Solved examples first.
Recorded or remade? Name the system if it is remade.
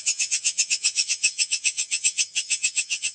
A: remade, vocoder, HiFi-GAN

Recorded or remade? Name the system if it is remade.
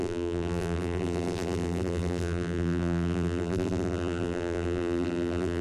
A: remade, vocoder, BigVGAN v2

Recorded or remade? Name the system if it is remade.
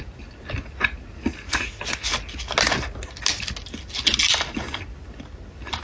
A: recorded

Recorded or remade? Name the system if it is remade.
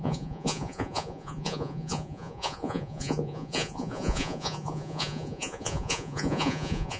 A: remade, vocoder, Vocos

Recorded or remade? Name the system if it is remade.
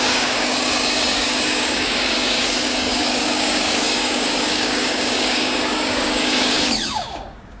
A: remade, codec, DAC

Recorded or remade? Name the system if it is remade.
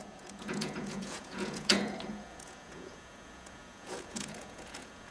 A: remade, vocoder, Vocos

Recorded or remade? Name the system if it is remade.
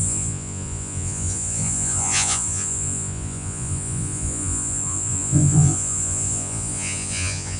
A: remade, vocoder, Vocos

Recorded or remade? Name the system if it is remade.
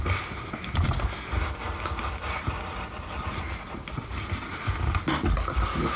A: recorded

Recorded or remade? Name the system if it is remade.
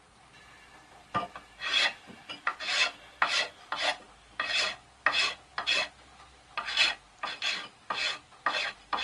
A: recorded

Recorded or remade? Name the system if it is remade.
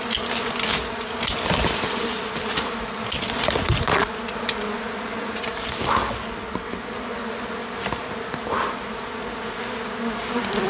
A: recorded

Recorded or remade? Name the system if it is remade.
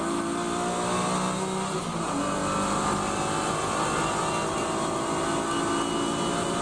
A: recorded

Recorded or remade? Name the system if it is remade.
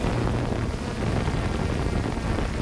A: recorded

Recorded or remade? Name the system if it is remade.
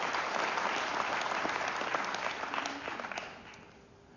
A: recorded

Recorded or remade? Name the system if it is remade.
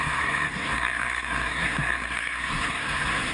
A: remade, codec, SNAC